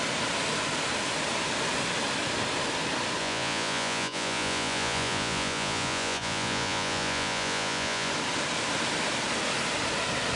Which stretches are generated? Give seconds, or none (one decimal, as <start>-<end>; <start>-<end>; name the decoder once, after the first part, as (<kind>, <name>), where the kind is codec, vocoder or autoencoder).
3.2-8.1 (vocoder, Vocos)